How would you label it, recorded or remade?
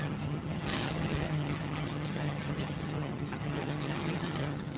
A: remade